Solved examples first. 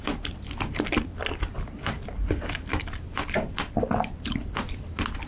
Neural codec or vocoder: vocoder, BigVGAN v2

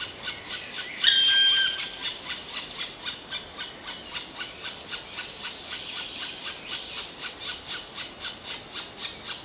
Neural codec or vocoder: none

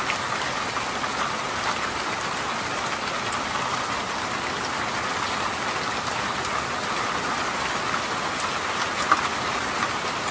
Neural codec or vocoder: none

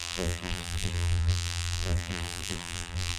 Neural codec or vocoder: vocoder, BigVGAN v2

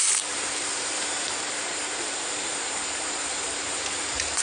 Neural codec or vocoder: vocoder, BigVGAN v2